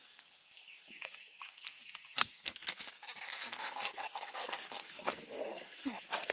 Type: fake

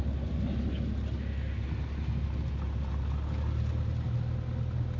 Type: real